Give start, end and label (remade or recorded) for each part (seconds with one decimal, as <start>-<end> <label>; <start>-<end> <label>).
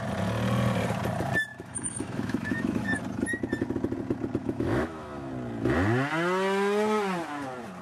0.0-1.5 recorded; 1.5-3.0 remade; 3.0-4.4 recorded; 4.4-5.3 remade; 5.3-7.8 recorded